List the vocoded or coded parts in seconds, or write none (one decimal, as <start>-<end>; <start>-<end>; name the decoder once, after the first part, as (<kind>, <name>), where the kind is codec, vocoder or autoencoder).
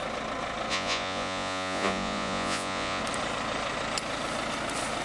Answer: 0.7-3.0 (vocoder, Vocos)